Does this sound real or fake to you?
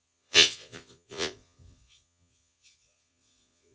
fake